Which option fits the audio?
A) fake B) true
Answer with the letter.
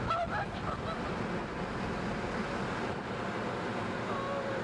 B